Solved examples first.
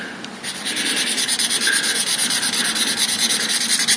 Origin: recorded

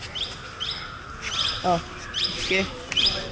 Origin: recorded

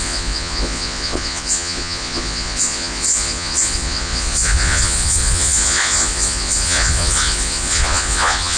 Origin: remade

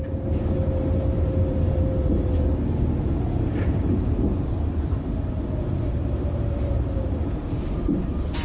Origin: remade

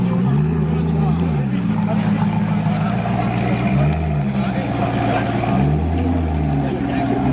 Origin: recorded